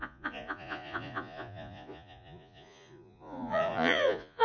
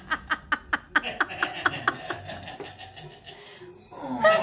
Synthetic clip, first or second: first